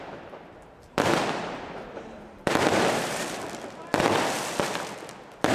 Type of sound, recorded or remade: remade